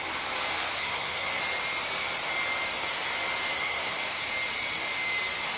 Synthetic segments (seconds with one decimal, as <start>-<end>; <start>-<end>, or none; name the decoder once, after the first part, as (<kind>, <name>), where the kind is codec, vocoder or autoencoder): 0.8-1.4 (codec, SNAC); 3.5-4.0

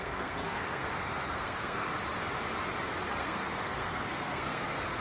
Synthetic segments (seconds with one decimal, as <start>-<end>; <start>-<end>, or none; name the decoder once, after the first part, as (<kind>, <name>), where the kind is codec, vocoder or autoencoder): 0.0-1.9 (codec, SNAC); 3.2-5.0

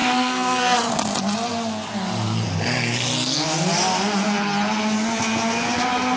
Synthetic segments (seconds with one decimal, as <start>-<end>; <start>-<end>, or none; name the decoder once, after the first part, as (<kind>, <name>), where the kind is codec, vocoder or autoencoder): 0.0-0.9 (codec, SNAC)